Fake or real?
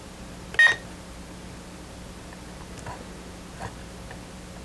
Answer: real